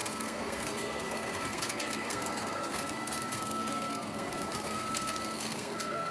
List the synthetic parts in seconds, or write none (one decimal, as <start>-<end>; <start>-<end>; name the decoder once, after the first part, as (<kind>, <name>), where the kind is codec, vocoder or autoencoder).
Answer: 0.0-6.1 (codec, SNAC)